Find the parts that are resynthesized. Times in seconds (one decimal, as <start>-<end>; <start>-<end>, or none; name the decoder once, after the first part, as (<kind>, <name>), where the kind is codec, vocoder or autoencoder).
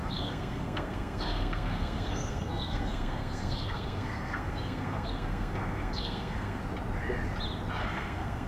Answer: 0.0-6.6 (codec, SNAC); 7.8-8.5